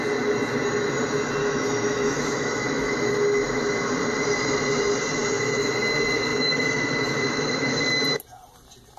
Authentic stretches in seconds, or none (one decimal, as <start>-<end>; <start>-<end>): 0.0-1.4; 2.9-6.3; 7.8-9.0